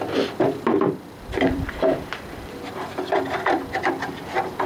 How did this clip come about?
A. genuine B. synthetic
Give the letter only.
B